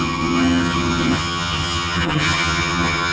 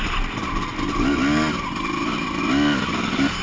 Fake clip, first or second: first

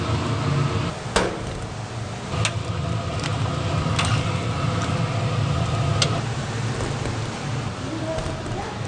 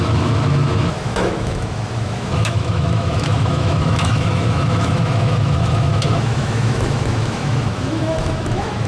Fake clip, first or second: second